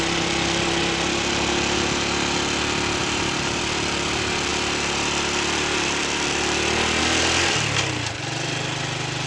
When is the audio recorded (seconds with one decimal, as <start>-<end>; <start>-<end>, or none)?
0.0-3.0; 3.6-9.3